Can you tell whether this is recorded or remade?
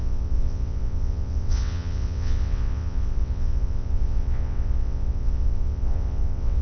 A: remade